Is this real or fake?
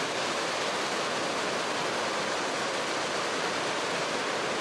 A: real